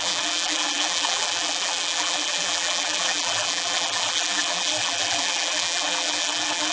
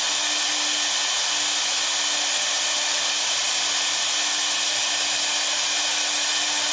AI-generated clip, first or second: first